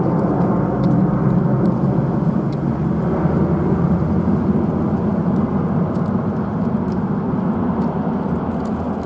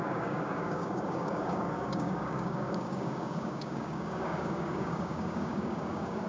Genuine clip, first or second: first